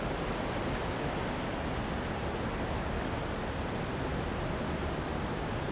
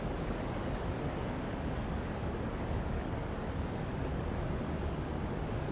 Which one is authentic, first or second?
first